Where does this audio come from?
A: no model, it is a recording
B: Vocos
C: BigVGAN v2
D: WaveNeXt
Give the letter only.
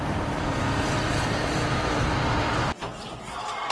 C